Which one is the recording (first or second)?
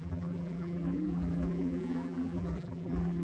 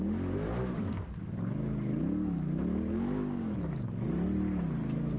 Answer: second